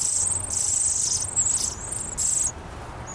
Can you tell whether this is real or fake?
real